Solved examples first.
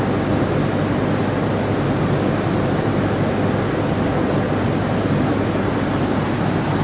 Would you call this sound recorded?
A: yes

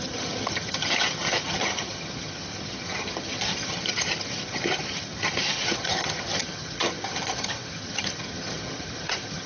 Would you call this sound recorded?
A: no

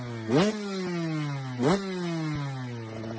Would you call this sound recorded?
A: yes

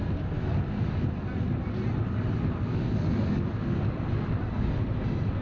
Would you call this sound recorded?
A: yes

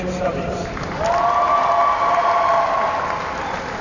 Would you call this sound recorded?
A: yes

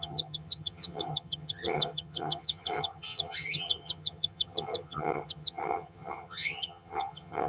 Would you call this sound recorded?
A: no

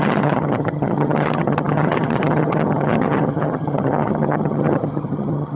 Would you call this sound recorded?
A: no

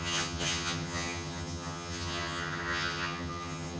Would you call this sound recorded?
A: no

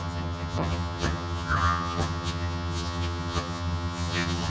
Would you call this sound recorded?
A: no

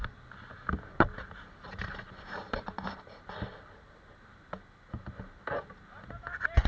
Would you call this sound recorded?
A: yes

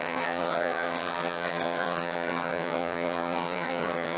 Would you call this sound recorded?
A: no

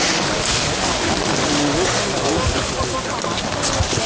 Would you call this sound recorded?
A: yes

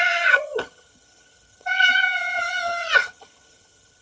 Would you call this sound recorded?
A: no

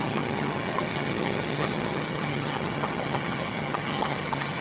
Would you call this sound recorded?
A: no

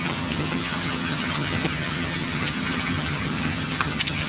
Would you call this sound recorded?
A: no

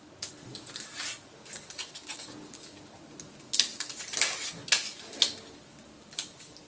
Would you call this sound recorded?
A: yes